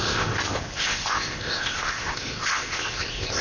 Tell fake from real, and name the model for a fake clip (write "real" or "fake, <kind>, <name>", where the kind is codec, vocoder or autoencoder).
fake, codec, ZipCodec